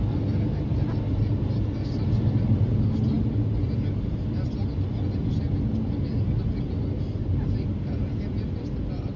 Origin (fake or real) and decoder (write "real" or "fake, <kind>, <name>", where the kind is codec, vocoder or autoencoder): real